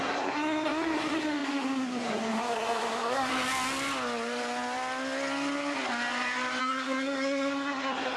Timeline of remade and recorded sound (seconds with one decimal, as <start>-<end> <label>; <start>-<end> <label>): 0.0-3.3 remade; 3.3-6.6 recorded; 6.6-8.2 remade